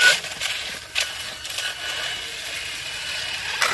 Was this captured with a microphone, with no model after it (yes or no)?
yes